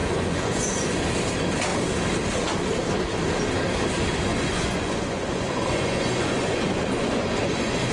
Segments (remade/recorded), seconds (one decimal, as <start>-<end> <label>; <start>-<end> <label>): 0.0-1.0 remade; 1.0-4.3 recorded; 4.3-7.9 remade